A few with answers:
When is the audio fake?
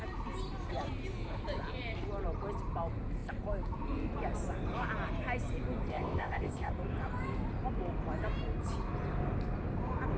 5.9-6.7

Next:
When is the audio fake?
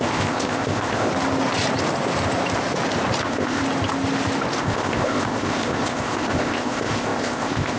0.0-1.1; 3.2-3.6; 4.6-7.8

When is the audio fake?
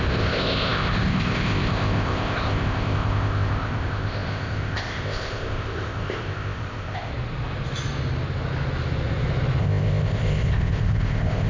0.0-7.1; 9.6-11.5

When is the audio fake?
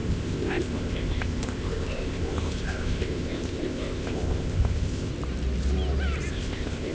0.0-5.1; 6.3-6.9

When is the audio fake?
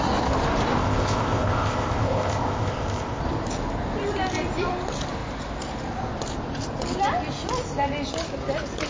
0.8-3.2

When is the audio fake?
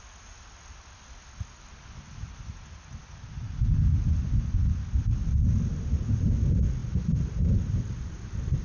none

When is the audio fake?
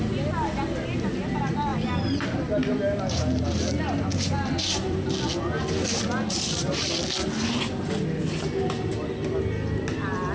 none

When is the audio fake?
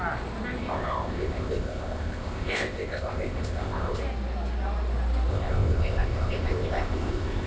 0.6-4.0; 5.3-7.5